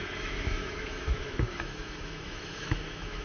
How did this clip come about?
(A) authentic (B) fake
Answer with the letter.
B